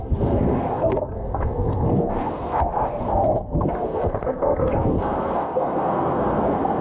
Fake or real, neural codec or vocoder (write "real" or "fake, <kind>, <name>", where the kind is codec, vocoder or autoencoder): fake, codec, SNAC